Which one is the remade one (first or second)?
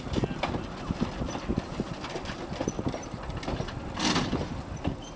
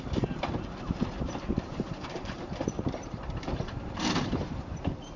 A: second